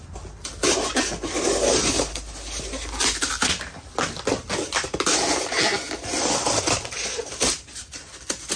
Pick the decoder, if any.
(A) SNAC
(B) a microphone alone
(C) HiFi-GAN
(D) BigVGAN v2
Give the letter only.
B